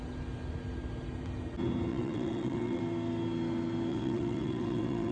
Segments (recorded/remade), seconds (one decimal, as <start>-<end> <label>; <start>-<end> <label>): 0.0-1.9 recorded; 1.9-2.8 remade; 2.8-3.9 recorded; 3.9-5.1 remade